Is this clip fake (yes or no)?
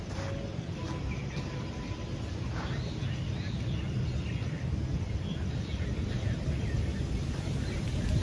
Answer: no